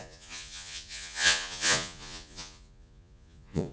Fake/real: fake